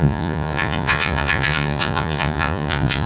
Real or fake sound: fake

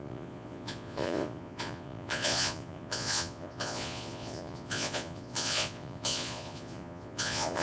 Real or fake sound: fake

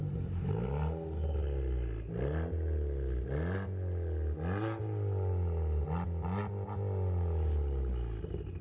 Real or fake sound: real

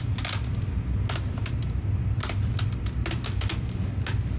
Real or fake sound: real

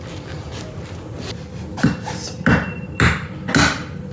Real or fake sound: real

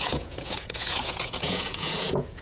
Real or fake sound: fake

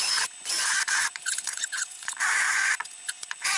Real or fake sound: fake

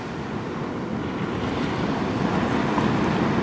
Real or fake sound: real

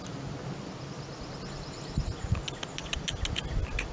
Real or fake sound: real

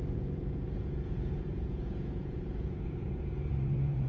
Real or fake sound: fake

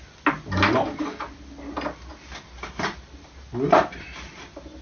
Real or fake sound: real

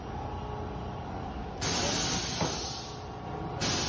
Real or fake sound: real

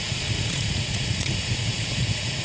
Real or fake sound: fake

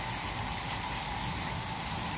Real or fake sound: real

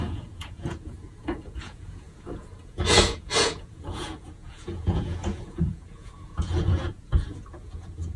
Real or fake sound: fake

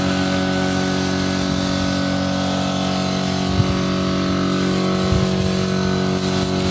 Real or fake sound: real